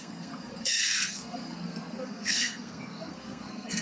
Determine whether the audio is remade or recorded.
remade